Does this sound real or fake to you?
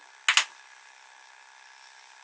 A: real